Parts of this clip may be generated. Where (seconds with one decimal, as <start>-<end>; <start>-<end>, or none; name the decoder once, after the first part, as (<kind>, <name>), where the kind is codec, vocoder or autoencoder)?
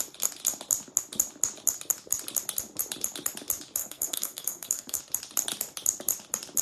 3.8-5.0 (codec, SNAC)